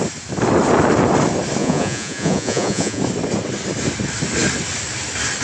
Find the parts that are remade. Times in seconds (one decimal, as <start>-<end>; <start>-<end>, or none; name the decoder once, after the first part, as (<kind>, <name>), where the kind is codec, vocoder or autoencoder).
1.6-3.0 (vocoder, Vocos)